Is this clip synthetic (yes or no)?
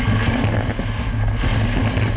no